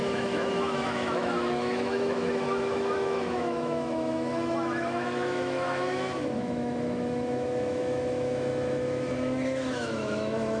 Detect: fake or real fake